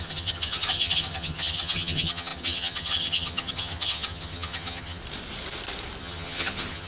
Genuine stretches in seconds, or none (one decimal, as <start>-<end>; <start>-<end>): 5.0-6.0